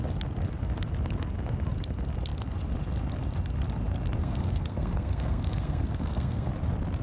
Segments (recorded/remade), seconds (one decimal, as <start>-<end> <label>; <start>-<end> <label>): 0.0-4.2 recorded; 4.2-6.5 remade; 6.5-7.0 recorded